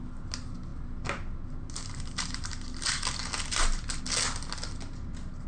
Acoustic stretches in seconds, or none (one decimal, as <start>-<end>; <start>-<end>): 0.0-5.5